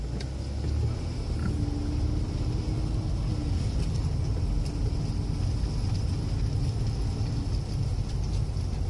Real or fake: real